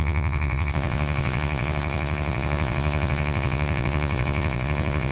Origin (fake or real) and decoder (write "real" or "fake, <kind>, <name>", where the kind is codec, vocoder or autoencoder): fake, vocoder, Vocos